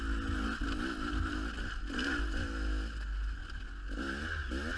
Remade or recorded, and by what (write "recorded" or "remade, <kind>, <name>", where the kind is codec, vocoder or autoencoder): recorded